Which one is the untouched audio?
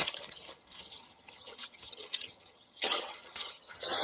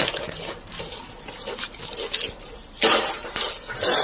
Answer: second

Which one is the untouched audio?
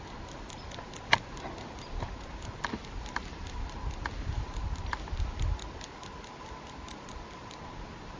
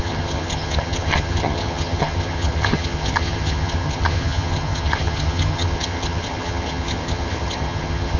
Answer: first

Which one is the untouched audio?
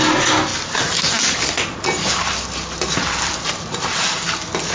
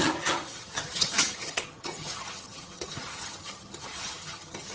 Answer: first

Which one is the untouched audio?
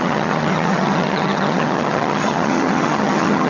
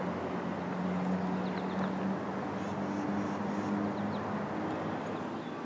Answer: second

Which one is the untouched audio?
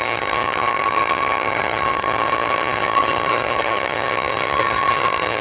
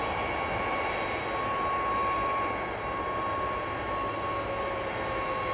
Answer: second